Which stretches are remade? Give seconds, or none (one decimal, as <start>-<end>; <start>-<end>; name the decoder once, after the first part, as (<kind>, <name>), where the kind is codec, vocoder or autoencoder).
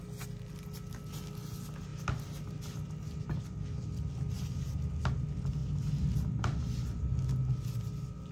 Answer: none